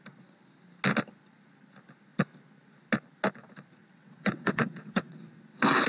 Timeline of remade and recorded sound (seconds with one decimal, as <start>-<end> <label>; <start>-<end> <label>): 0.0-3.8 recorded; 3.8-5.2 remade; 5.2-5.9 recorded